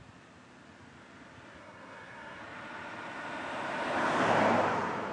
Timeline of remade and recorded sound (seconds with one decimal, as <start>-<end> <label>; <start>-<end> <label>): 0.0-1.6 recorded; 1.6-2.4 remade; 2.4-5.1 recorded